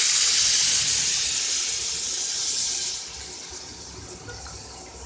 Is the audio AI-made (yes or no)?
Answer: no